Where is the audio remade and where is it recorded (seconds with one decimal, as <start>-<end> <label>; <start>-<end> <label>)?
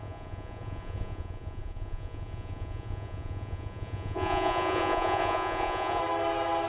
0.0-6.0 remade; 6.0-6.7 recorded